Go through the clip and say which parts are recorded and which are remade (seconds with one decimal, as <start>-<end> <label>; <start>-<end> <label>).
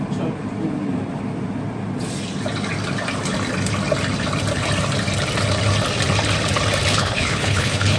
0.0-6.9 recorded; 6.9-8.0 remade